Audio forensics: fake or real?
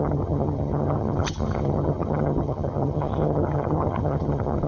fake